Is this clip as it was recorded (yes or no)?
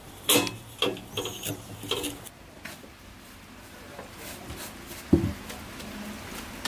yes